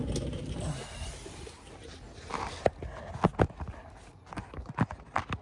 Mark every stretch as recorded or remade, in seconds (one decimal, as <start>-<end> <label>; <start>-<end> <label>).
0.0-5.4 recorded

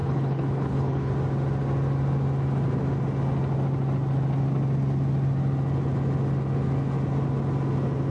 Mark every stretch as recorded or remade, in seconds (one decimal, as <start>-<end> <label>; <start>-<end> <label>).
0.0-1.1 remade; 1.1-8.1 recorded

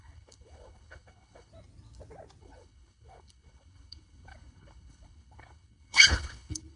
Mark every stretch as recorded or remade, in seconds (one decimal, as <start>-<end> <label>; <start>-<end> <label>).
0.0-1.5 remade; 1.5-2.4 recorded; 2.4-6.8 remade

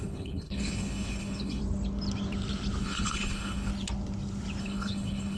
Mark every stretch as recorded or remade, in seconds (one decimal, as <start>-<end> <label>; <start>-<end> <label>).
0.0-1.6 remade; 1.6-2.8 recorded; 2.8-3.7 remade; 3.7-4.6 recorded; 4.6-5.4 remade

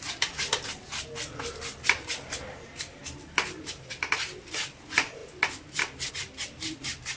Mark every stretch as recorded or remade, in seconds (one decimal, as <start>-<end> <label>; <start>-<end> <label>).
0.0-7.2 recorded

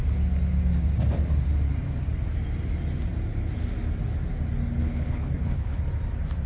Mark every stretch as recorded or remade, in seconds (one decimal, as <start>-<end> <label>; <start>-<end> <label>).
0.0-4.8 recorded; 4.8-5.8 remade; 5.8-6.5 recorded

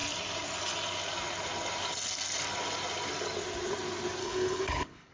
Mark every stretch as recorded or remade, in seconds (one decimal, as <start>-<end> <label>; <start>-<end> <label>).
0.0-4.2 recorded; 4.2-5.1 remade